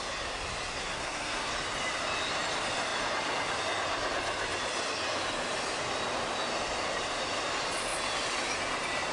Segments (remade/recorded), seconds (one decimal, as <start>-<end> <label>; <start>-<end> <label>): 0.0-0.8 recorded; 0.8-1.5 remade; 1.5-9.1 recorded